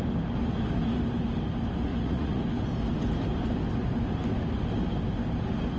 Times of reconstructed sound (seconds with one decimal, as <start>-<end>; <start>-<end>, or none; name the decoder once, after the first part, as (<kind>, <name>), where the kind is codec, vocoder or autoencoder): 1.9-2.4 (vocoder, Vocos)